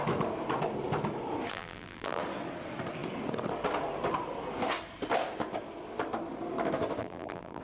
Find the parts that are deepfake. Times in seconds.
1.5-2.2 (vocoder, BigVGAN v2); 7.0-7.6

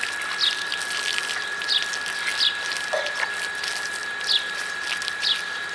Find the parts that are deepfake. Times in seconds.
4.0-5.7 (vocoder, BigVGAN v2)

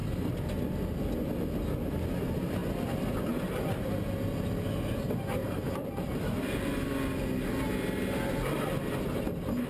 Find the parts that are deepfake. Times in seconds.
5.4-6.5 (vocoder, BigVGAN v2)

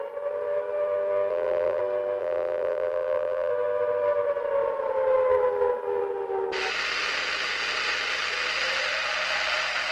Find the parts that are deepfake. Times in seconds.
1.3-1.8 (vocoder, BigVGAN v2); 2.2-3.5

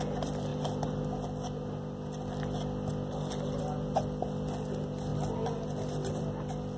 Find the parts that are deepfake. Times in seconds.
0.0-0.5 (vocoder, BigVGAN v2); 3.6-6.8

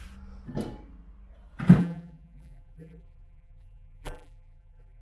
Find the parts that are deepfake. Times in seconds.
1.8-5.0 (vocoder, BigVGAN v2)

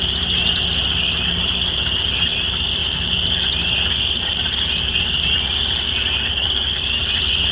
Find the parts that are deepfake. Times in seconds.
none